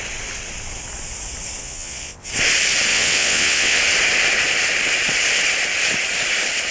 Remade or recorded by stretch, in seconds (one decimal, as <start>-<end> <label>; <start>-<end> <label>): 0.0-1.6 recorded; 1.6-2.3 remade; 2.3-2.9 recorded; 2.9-3.8 remade; 3.8-6.7 recorded